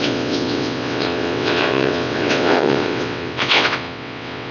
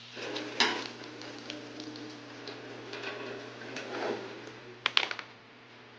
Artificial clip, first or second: first